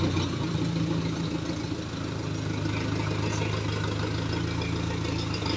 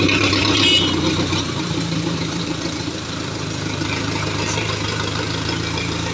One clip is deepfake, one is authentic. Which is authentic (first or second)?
first